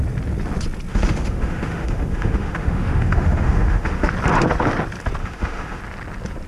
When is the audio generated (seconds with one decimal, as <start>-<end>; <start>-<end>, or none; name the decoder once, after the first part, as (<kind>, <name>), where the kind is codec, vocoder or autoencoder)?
0.9-4.1 (autoencoder, DAC-VAE); 5.2-5.8